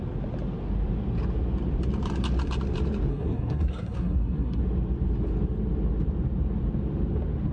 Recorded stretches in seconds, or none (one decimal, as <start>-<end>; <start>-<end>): 0.0-3.1; 4.6-7.5